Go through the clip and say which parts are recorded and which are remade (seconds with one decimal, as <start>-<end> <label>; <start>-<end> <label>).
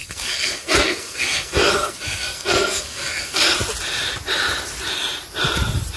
0.0-3.4 remade; 3.4-6.0 recorded